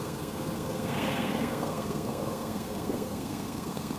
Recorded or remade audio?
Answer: remade